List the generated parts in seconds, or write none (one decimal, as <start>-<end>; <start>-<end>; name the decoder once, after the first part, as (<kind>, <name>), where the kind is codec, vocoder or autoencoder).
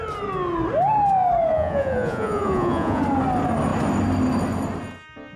1.5-3.0 (vocoder, Vocos)